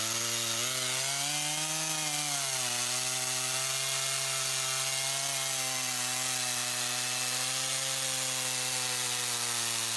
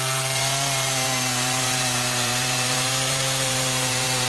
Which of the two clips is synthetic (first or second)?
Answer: second